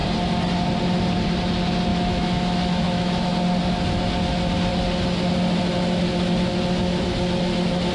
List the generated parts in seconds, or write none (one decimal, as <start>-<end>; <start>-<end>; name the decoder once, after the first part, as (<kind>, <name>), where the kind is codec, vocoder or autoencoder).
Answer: 1.9-3.3 (autoencoder, DAC-VAE)